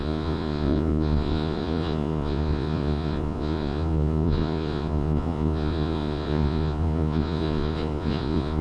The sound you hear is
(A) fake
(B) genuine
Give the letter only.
A